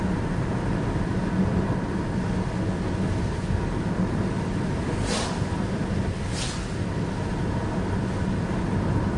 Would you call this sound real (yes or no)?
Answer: yes